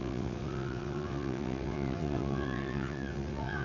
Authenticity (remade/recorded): remade